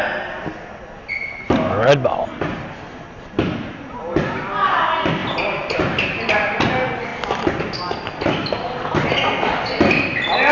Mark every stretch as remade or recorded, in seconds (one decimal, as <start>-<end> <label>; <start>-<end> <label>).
0.0-10.5 recorded